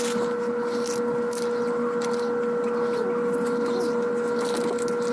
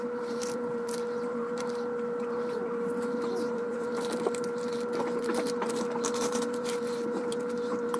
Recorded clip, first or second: first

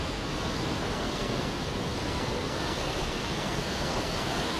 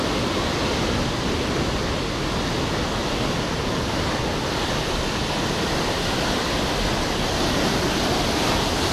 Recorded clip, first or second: second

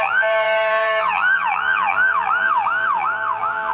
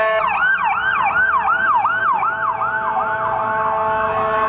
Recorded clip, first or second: second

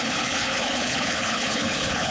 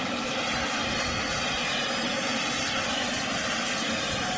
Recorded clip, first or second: second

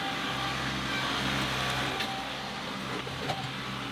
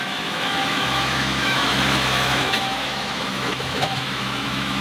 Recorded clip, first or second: first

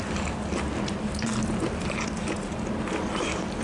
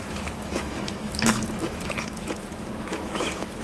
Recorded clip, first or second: first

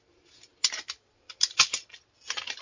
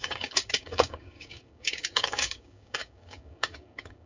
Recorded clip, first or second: first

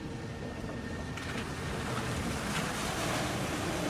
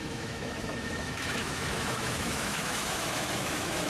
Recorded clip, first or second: first